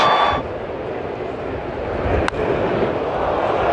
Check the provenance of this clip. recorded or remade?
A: recorded